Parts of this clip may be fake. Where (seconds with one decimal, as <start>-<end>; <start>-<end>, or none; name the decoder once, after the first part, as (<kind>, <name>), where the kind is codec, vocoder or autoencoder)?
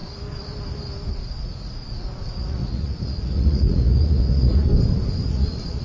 1.1-4.7 (vocoder, Vocos); 5.3-5.8